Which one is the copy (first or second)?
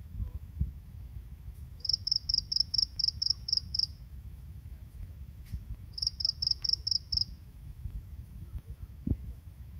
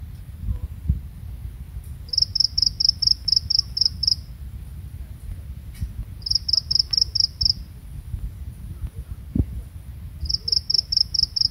first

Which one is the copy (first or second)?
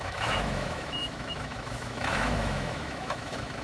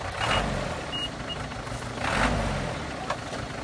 first